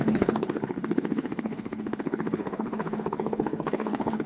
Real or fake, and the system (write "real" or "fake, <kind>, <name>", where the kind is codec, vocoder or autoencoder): fake, codec, HILCodec